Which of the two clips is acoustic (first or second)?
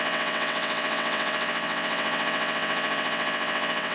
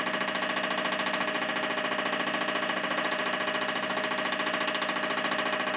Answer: second